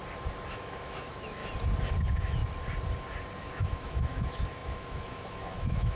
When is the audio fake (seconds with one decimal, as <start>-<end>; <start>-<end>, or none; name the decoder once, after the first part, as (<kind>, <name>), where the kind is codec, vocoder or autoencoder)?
0.5-1.4 (autoencoder, DAC-VAE); 2.0-2.4; 3.4-6.0